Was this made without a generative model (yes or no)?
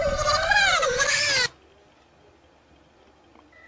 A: yes